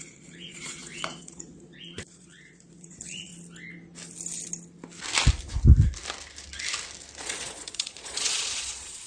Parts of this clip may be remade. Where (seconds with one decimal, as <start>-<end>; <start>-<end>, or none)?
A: 0.0-3.3; 7.2-9.1

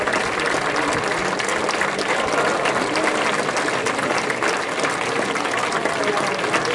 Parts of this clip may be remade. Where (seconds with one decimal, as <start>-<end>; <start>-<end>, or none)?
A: none

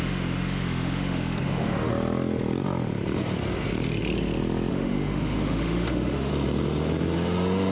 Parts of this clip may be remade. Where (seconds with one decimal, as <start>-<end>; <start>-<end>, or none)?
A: 0.0-1.9; 4.7-6.3